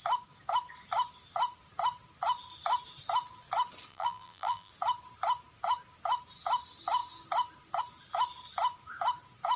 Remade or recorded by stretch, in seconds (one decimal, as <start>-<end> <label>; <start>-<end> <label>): 0.0-3.9 recorded; 3.9-4.7 remade; 4.7-9.6 recorded